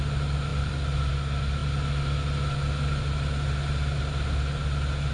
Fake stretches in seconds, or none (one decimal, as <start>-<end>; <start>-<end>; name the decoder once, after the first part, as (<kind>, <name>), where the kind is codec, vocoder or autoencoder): 0.5-1.1 (vocoder, BigVGAN v2)